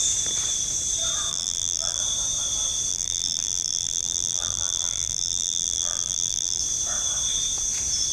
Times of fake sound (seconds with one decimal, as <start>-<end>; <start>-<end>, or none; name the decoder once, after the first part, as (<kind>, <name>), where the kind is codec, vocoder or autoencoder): 1.3-2.0 (vocoder, BigVGAN v2); 2.9-6.6